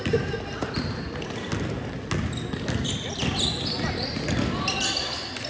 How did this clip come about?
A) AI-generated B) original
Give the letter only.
B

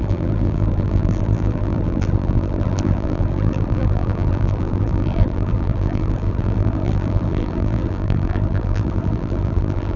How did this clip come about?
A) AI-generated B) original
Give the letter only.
A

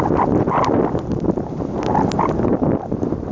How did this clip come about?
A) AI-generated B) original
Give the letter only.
A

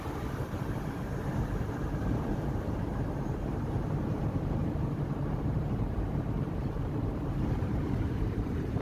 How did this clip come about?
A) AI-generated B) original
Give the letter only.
A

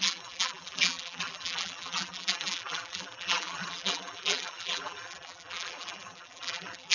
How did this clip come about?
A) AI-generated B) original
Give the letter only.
A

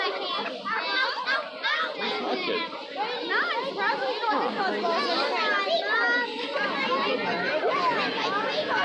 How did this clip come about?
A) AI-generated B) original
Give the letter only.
B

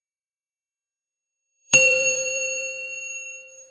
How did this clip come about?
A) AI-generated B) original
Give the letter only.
A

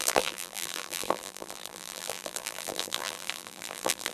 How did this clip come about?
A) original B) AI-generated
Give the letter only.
B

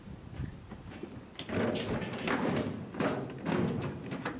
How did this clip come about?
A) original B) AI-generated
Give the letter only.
A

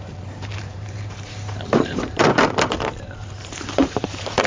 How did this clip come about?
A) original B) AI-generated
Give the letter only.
B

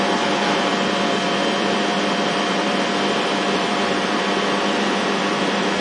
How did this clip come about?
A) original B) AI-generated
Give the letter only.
B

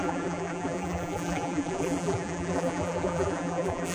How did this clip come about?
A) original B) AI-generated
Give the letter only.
B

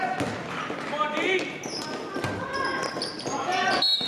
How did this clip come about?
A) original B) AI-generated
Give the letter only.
A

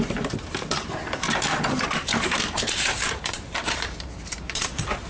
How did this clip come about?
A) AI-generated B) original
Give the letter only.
A